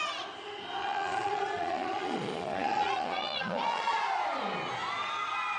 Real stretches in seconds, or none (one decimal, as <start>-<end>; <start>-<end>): 0.0-0.8; 4.0-5.6